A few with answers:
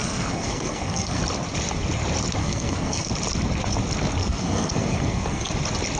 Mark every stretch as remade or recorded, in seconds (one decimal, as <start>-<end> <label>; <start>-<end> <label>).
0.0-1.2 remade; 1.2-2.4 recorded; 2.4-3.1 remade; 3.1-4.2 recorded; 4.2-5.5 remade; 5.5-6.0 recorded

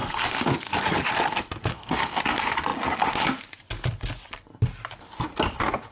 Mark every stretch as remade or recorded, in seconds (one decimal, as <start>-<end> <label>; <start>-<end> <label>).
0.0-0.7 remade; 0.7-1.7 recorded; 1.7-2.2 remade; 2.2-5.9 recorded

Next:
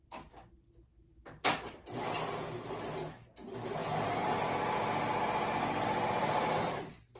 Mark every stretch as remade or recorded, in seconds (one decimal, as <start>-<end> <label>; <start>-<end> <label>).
0.0-7.2 recorded

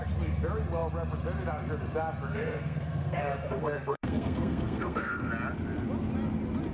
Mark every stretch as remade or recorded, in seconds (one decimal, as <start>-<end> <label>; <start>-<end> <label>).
0.0-2.3 recorded; 2.3-5.3 remade; 5.3-6.7 recorded

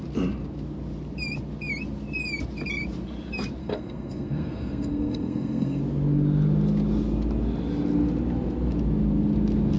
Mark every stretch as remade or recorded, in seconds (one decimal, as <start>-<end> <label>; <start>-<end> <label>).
0.0-3.6 recorded; 3.6-5.8 remade; 5.8-9.8 recorded

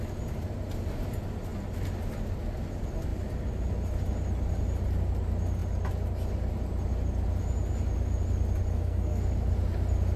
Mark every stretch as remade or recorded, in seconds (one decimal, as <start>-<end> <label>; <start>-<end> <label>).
0.0-8.7 recorded; 8.7-9.2 remade; 9.2-10.2 recorded

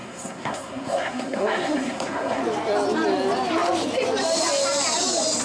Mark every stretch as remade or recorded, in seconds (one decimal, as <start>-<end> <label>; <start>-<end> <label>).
0.0-2.4 remade; 2.4-5.4 recorded